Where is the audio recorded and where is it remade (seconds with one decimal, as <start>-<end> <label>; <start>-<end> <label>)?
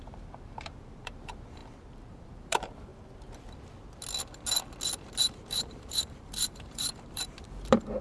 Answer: 0.0-1.6 remade; 1.6-2.1 recorded; 2.1-2.9 remade; 2.9-5.5 recorded; 5.5-8.0 remade